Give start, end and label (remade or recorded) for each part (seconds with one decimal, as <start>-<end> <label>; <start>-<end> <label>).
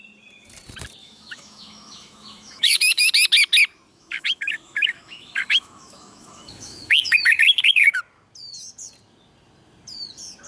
0.0-1.0 recorded; 1.0-3.1 remade; 3.1-3.9 recorded; 3.9-8.0 remade; 8.0-10.5 recorded